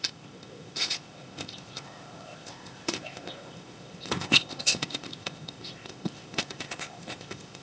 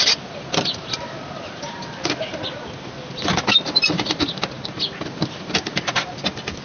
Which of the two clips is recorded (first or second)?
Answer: second